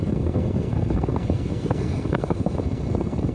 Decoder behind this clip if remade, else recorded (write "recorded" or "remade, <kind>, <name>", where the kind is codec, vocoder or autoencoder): remade, codec, SNAC